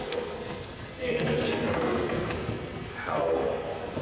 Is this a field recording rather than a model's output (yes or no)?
no